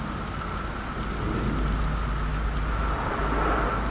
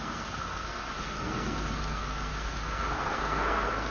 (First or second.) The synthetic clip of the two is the second